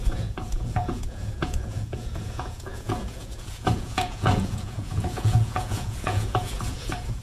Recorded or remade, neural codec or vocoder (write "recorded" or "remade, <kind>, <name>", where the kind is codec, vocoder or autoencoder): remade, vocoder, Vocos